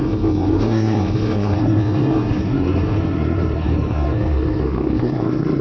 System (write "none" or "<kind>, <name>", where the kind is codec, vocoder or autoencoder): codec, SNAC